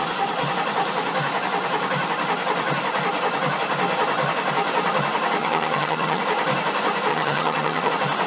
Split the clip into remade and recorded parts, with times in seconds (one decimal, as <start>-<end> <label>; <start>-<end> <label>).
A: 0.0-5.4 recorded; 5.4-6.2 remade; 6.2-7.1 recorded; 7.1-7.9 remade; 7.9-8.3 recorded